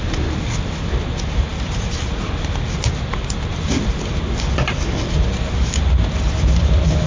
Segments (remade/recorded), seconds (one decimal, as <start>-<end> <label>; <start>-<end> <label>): 0.0-7.1 recorded